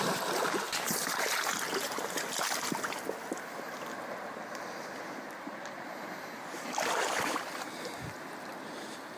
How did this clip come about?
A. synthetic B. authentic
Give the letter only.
B